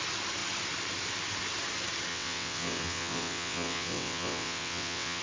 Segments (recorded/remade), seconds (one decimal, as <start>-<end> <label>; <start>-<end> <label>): 0.0-2.1 recorded; 2.1-5.2 remade